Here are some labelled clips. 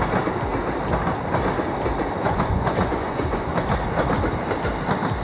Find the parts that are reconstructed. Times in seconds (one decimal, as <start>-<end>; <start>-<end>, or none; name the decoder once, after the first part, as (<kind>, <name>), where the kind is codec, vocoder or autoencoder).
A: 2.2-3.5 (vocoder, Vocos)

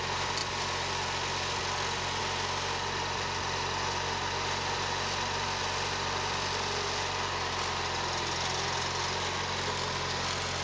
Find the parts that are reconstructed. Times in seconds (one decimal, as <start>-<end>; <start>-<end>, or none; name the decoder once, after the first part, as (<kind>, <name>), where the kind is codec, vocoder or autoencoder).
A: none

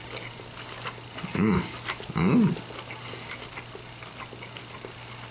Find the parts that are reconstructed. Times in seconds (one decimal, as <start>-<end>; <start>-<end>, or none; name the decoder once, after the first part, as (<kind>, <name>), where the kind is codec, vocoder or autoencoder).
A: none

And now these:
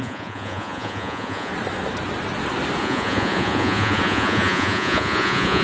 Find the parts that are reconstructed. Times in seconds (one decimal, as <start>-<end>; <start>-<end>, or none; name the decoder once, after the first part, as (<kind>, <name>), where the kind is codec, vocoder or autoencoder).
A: 0.0-1.5 (vocoder, Vocos); 2.8-5.6

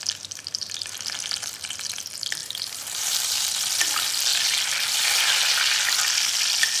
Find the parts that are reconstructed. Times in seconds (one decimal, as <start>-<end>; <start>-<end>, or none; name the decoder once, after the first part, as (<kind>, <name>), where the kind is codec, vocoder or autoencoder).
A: 2.4-3.5 (vocoder, BigVGAN v2)

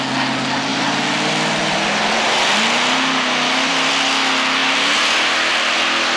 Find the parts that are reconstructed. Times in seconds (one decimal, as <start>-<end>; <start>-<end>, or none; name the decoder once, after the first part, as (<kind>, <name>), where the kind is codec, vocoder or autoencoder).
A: 0.7-3.9 (vocoder, BigVGAN v2); 4.6-5.5

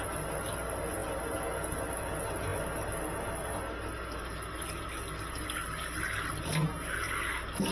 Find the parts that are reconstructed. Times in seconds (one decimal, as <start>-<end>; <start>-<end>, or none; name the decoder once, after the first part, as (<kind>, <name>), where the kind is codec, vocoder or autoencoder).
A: none